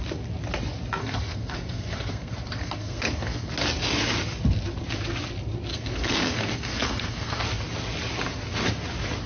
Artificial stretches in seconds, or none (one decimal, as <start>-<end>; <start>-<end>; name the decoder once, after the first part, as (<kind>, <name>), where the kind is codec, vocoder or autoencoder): 1.0-3.5 (codec, SNAC); 5.7-7.4